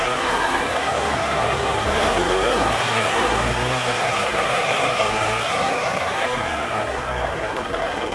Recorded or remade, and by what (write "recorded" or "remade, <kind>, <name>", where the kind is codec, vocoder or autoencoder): remade, codec, SNAC